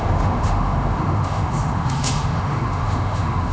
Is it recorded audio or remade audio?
remade